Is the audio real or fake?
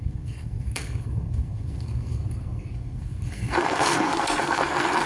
fake